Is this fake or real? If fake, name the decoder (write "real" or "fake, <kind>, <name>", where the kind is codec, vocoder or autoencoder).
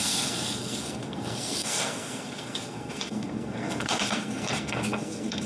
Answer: fake, codec, SNAC